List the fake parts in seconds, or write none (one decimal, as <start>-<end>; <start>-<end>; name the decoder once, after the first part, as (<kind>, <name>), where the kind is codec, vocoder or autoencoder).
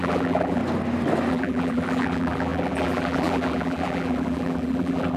0.0-0.6 (vocoder, BigVGAN v2); 1.3-5.2